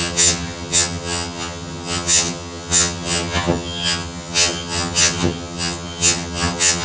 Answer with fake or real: fake